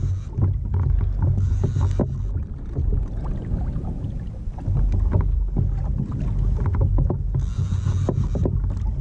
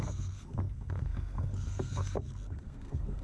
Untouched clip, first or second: first